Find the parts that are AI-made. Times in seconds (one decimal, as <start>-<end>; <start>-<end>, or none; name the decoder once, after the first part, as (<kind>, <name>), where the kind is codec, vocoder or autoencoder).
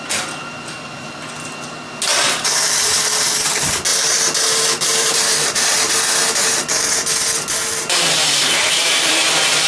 2.1-3.0 (vocoder, BigVGAN v2); 5.0-5.9; 8.2-9.2